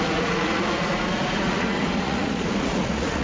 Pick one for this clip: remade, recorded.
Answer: remade